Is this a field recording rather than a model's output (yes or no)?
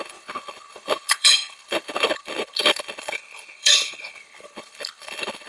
no